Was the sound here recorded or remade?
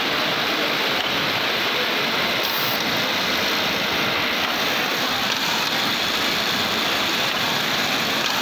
recorded